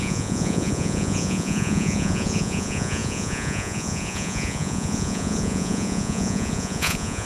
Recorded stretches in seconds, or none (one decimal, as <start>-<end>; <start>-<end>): none